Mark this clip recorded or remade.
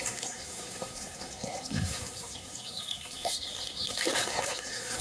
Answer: remade